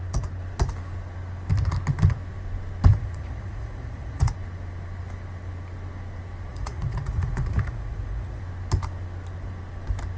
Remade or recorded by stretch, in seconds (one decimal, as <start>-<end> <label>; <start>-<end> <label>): 0.0-2.9 recorded; 2.9-4.3 remade; 4.3-6.5 recorded; 6.5-8.4 remade; 8.4-10.2 recorded